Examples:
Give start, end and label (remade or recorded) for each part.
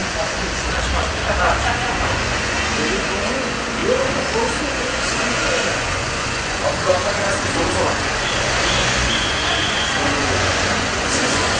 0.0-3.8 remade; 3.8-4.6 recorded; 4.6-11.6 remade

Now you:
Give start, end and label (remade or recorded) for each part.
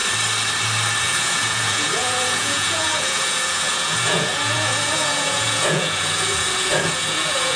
0.0-1.0 recorded; 1.0-7.6 remade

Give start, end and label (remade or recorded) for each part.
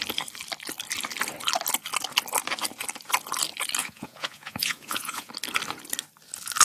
0.0-3.8 recorded; 3.8-5.3 remade; 5.3-6.6 recorded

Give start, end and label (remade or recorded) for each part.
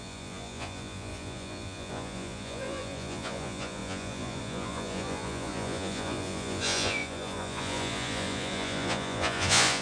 0.0-9.8 remade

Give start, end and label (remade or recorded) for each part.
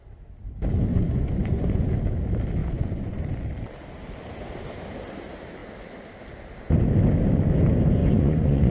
0.0-0.9 recorded; 0.9-1.8 remade; 1.8-2.6 recorded; 2.6-3.3 remade; 3.3-8.0 recorded; 8.0-8.7 remade